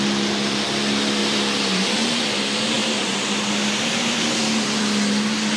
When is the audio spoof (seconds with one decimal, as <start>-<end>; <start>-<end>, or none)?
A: 1.2-2.2; 2.8-4.8